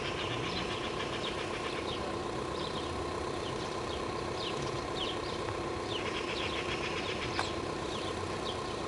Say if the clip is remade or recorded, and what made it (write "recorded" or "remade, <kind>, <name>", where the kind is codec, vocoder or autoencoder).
remade, vocoder, BigVGAN v2